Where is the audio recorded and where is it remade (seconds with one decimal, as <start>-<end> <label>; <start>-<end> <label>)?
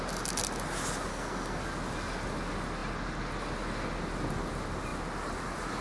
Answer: 0.0-1.1 recorded; 1.1-1.6 remade; 1.6-5.8 recorded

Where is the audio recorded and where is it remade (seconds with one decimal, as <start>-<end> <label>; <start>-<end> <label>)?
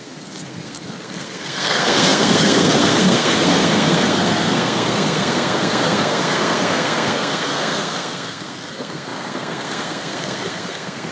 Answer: 0.0-11.1 remade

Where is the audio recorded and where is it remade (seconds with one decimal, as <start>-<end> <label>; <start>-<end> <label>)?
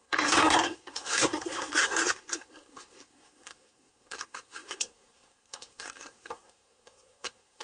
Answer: 0.0-7.6 remade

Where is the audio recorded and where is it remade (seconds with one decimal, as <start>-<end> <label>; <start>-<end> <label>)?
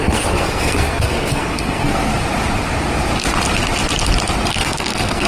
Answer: 0.0-2.1 remade; 2.1-4.5 recorded; 4.5-5.3 remade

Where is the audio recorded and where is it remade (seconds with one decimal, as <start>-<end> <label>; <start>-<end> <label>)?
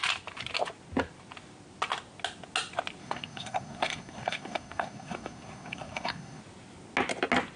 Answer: 0.0-3.0 recorded; 3.0-6.4 remade; 6.4-7.6 recorded